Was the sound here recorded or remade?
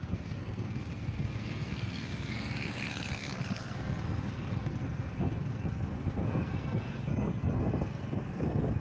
remade